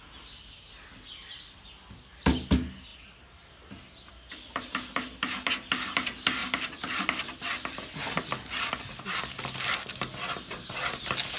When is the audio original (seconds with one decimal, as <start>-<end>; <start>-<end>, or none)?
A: 0.0-11.4